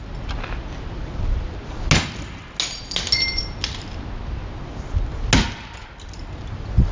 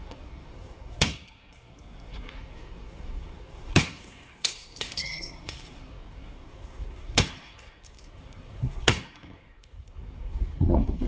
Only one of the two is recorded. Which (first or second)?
first